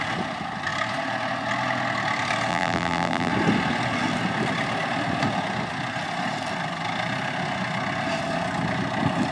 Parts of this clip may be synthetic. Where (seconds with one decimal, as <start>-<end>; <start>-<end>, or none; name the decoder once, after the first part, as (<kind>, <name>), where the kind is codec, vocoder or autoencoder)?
2.5-3.3 (vocoder, BigVGAN v2)